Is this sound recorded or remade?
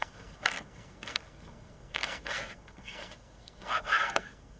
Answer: remade